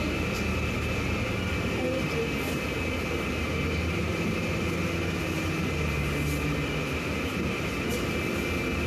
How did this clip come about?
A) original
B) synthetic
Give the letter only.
A